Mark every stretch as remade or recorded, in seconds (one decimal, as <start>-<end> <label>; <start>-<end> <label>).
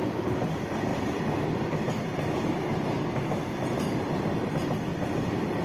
0.0-5.6 recorded